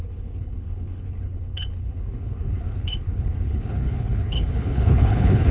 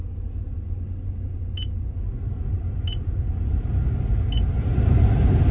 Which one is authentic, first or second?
second